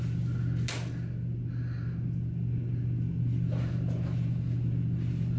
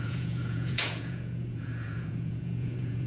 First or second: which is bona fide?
first